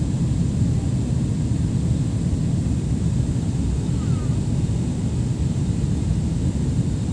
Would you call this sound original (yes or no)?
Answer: yes